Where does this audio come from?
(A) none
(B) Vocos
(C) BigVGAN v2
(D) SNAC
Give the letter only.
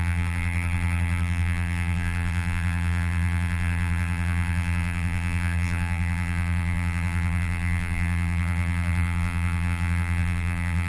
C